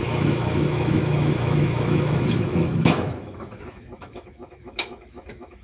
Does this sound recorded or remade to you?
remade